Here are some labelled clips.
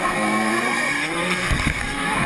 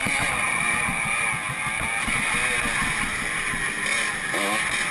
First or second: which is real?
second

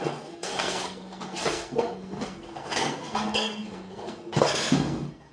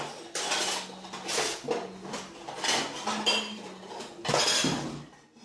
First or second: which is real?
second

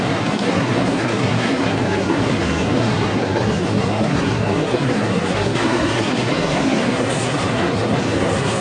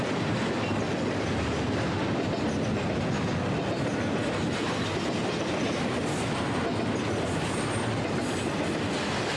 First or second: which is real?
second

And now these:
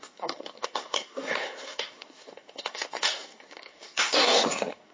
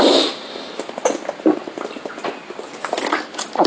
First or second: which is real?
second